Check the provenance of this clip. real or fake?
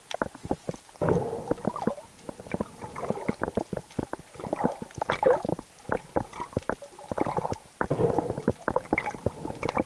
real